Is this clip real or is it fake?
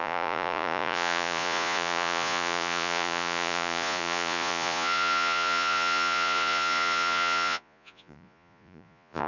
fake